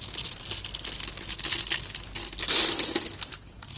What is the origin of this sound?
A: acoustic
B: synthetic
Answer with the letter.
A